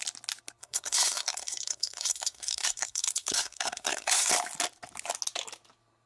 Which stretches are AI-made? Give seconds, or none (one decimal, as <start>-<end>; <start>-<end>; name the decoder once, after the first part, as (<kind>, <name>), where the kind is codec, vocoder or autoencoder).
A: 0.6-4.3 (codec, SNAC)